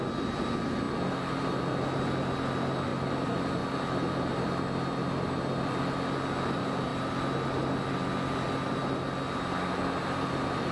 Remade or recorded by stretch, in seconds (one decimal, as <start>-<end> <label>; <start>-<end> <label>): 0.0-10.7 recorded